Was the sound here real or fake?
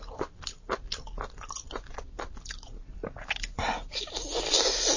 real